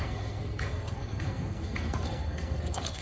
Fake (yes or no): yes